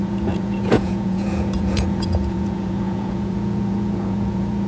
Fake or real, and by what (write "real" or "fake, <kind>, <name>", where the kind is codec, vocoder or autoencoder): fake, vocoder, Vocos